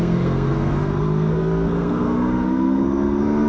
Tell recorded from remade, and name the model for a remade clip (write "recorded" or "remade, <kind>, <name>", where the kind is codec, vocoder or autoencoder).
remade, codec, SNAC